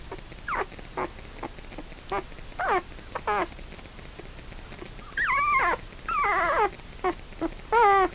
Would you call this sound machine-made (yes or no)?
no